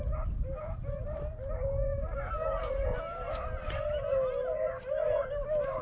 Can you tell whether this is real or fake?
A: real